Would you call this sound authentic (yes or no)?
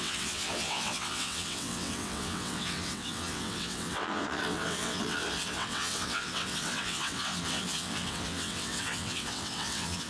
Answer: no